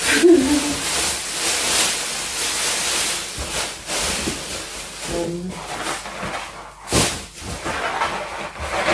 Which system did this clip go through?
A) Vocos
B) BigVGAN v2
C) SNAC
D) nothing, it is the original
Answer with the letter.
D